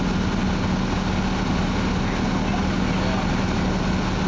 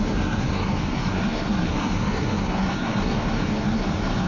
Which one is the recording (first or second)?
first